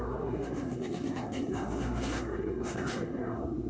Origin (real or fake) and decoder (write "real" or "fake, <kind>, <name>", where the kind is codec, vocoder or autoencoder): fake, codec, SNAC